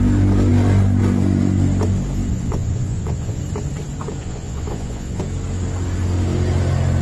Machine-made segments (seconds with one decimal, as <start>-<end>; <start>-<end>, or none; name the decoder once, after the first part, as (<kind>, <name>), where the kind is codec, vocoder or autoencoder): 2.3-3.4 (vocoder, Vocos); 4.2-5.2